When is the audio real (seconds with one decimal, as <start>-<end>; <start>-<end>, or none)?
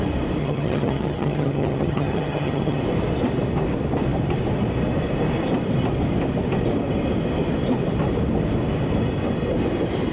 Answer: 0.0-0.4; 2.8-10.1